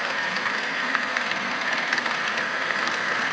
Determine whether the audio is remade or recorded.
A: remade